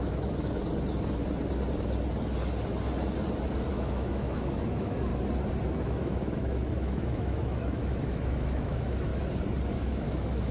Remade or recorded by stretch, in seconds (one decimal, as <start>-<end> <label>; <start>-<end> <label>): 0.0-0.6 remade; 0.6-3.7 recorded; 3.7-5.1 remade; 5.1-5.8 recorded; 5.8-9.1 remade; 9.1-9.7 recorded; 9.7-10.5 remade